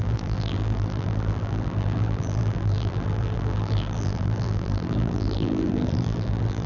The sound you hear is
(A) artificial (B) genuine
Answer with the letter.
A